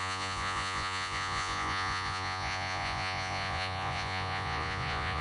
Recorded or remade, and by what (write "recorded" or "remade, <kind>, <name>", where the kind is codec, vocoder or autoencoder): remade, vocoder, Vocos